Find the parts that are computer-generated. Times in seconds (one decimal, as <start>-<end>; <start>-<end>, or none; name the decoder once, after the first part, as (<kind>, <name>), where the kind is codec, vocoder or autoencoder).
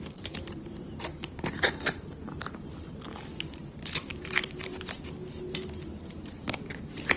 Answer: 0.0-4.7 (vocoder, BigVGAN v2); 5.4-7.2